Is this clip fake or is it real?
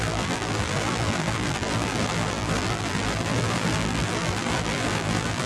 fake